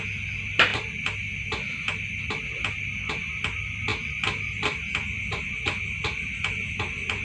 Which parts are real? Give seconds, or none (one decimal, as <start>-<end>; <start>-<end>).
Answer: 0.0-7.2